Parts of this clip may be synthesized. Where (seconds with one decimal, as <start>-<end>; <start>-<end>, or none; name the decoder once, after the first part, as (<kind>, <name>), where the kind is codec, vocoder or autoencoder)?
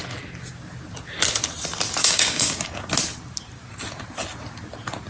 2.0-2.9 (codec, DAC)